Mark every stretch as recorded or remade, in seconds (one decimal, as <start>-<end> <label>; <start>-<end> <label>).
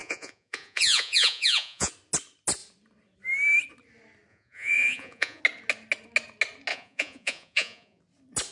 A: 0.0-1.9 remade; 1.9-4.3 recorded; 4.3-5.4 remade; 5.4-6.7 recorded; 6.7-8.0 remade; 8.0-8.5 recorded